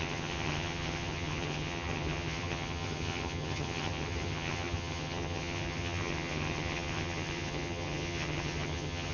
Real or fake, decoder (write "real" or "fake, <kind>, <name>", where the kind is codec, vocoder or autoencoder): fake, vocoder, HiFi-GAN